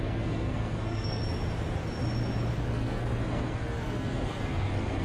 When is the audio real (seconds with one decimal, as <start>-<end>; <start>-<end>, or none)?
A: 1.2-2.6